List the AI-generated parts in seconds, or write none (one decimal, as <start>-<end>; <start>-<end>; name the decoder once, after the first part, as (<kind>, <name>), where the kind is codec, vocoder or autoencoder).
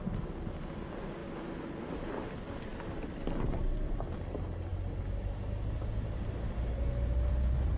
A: none